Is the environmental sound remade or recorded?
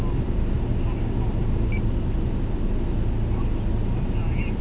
recorded